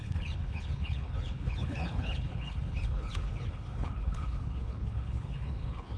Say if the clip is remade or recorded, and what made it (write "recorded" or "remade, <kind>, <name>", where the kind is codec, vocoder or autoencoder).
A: remade, codec, HILCodec